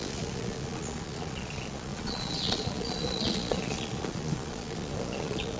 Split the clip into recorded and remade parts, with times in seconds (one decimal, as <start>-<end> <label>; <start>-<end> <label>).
0.0-5.6 remade